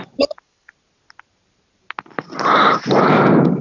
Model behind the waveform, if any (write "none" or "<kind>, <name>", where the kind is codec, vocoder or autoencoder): none